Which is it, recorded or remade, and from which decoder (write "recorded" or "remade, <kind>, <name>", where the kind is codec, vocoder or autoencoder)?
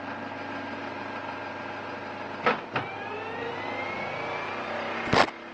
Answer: recorded